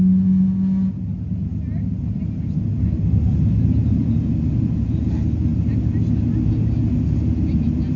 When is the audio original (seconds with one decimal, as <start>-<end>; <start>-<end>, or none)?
0.0-8.0